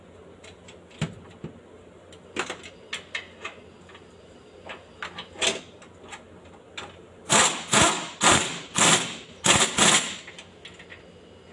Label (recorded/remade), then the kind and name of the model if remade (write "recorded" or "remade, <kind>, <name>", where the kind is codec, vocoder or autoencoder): recorded